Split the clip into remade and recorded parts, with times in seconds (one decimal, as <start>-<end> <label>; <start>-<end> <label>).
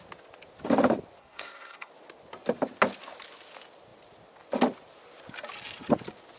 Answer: 0.0-1.2 recorded; 1.2-1.9 remade; 1.9-6.4 recorded